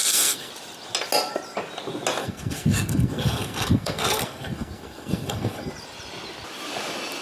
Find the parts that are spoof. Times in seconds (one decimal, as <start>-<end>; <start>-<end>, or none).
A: 0.0-0.5; 2.2-5.7

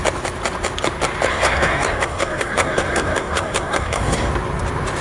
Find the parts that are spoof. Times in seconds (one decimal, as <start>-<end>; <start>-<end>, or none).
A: 1.3-4.3

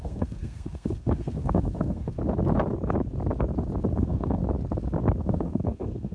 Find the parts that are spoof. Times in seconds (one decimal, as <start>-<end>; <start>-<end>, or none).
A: 0.0-2.2; 3.9-4.4; 5.2-6.1

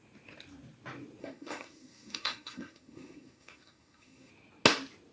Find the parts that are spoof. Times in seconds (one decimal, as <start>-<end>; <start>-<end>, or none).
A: 1.2-4.3

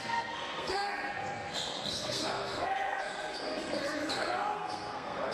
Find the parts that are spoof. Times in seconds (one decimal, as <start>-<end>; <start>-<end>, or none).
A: 0.0-5.3

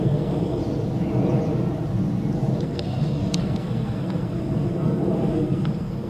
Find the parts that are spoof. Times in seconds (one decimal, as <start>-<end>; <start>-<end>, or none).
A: 0.0-0.6; 2.6-6.1

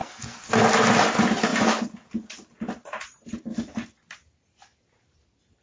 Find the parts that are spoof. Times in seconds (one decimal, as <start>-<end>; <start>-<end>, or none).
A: 0.0-0.5